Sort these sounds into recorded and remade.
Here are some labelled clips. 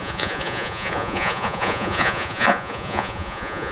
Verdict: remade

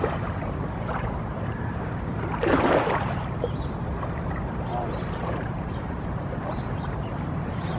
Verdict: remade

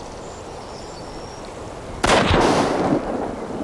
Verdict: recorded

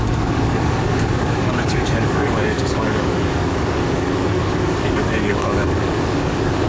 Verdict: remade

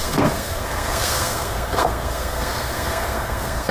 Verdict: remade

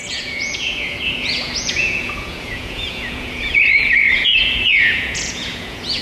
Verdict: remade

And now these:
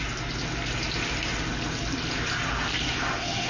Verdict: recorded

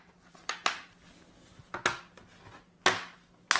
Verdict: recorded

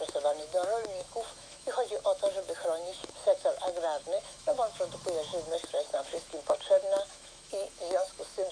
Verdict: remade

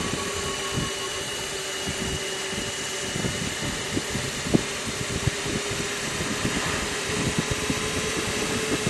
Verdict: recorded